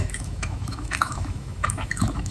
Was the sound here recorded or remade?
remade